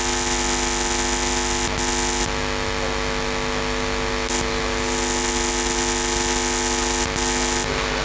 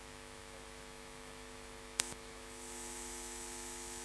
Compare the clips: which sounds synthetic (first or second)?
second